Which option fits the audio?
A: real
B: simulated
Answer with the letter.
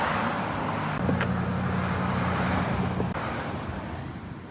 A